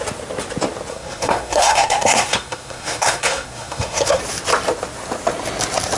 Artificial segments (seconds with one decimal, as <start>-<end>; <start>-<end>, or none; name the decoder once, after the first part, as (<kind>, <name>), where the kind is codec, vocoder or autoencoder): 0.9-4.2 (codec, SNAC)